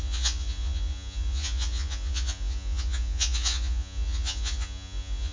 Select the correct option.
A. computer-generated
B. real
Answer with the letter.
A